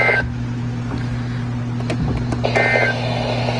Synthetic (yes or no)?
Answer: no